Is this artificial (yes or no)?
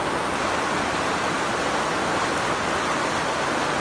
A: no